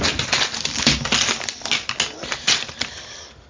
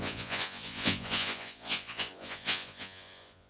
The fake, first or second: second